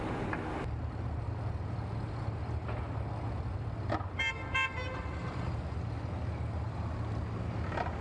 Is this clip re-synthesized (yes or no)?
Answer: no